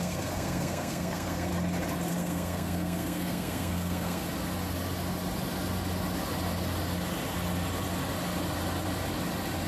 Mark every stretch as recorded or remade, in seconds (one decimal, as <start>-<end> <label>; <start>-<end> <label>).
0.0-1.5 remade; 1.5-2.1 recorded; 2.1-4.2 remade; 4.2-9.7 recorded